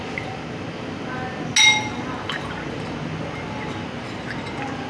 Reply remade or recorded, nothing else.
recorded